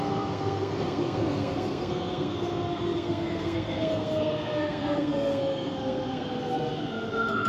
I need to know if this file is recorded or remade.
remade